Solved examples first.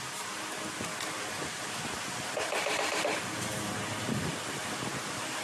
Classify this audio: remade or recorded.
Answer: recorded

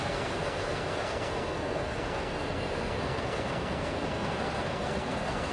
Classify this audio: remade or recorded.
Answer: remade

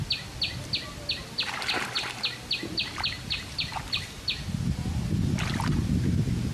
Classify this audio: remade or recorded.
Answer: recorded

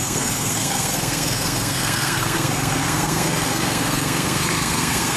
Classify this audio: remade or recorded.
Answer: remade